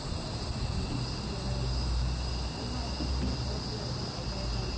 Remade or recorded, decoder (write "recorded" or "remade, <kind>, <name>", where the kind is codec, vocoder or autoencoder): recorded